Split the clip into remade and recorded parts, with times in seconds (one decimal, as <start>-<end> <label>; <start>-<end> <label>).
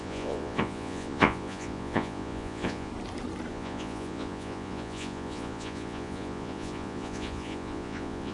0.0-2.9 remade; 2.9-3.5 recorded; 3.5-8.3 remade